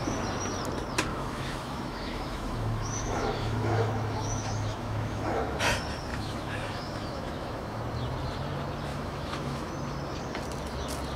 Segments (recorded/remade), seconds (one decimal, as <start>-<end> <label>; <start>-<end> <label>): 0.0-1.1 recorded; 1.1-5.6 remade; 5.6-6.1 recorded; 6.1-7.8 remade; 7.8-8.9 recorded; 8.9-9.7 remade; 9.7-11.2 recorded